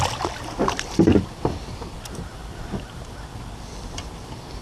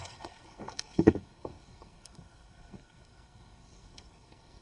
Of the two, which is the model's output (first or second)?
second